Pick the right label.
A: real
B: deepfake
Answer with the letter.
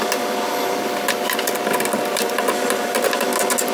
A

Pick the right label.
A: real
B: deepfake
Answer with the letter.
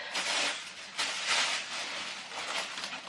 A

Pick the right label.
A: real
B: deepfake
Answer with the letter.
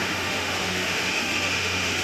B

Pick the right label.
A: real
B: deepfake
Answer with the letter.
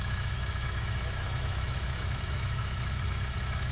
B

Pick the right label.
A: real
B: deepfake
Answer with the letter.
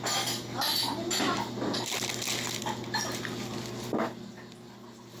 A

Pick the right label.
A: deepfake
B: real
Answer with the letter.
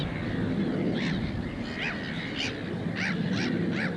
B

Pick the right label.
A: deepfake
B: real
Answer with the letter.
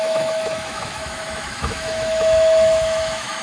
A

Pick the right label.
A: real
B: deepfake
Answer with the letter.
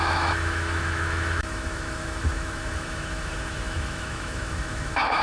B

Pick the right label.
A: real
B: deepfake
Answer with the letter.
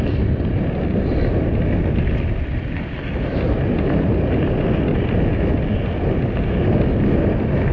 A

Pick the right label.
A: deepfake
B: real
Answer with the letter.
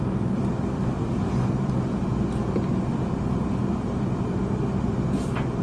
B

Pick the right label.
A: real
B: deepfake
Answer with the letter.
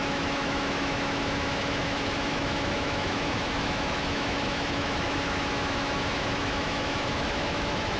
B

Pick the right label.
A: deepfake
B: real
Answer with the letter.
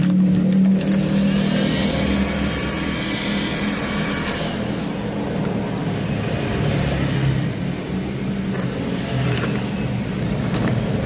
B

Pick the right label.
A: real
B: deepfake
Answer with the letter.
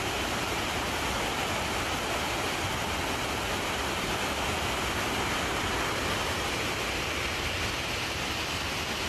A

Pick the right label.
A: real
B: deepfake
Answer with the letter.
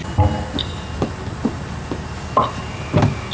A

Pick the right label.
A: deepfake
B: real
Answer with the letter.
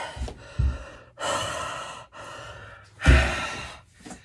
B